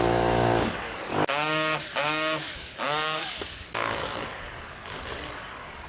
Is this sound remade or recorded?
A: remade